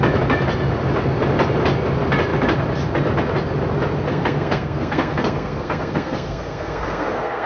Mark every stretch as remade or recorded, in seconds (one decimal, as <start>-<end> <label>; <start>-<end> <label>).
0.0-4.1 recorded; 4.1-7.5 remade